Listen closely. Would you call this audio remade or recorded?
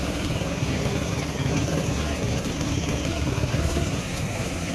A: remade